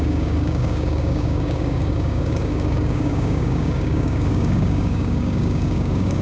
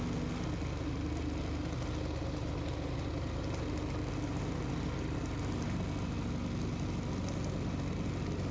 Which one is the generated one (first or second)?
first